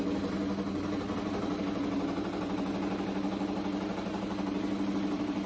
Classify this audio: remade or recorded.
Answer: recorded